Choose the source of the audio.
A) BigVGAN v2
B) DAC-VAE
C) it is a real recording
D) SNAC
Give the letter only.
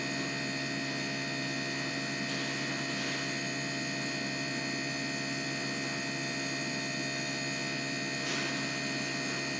C